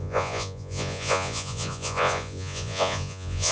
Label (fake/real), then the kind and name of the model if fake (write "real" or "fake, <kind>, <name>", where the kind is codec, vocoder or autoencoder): fake, vocoder, Vocos